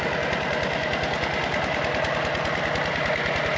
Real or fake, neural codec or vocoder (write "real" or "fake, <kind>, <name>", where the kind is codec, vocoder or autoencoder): real